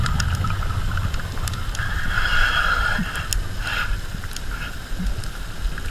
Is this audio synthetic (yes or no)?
no